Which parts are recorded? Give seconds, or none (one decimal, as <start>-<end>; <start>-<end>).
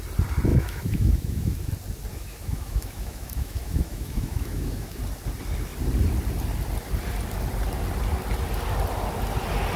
0.0-0.5; 1.7-2.1; 5.0-9.8